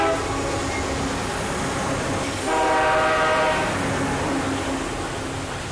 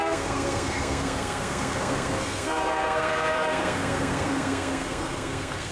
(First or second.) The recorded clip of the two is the first